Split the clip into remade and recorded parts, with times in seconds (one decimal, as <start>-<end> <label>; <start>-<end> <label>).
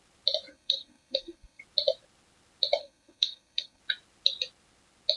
0.0-0.5 recorded; 0.5-1.6 remade; 1.6-2.8 recorded; 2.8-3.8 remade; 3.8-5.2 recorded